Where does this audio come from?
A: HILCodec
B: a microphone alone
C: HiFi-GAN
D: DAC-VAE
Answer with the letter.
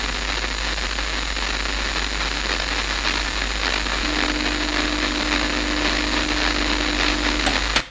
B